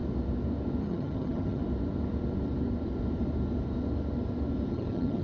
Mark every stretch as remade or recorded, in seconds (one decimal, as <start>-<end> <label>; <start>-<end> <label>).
0.0-0.8 recorded; 0.8-1.6 remade; 1.6-4.7 recorded; 4.7-5.2 remade